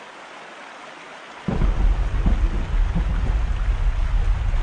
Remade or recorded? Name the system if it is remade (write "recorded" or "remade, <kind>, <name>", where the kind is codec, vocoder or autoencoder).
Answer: recorded